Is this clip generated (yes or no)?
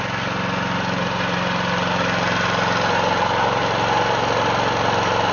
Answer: no